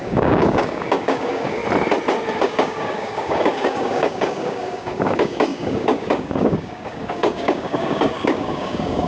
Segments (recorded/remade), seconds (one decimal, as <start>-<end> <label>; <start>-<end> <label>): 0.0-1.6 remade; 1.6-2.4 recorded; 2.4-9.1 remade